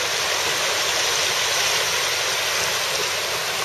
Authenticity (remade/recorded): recorded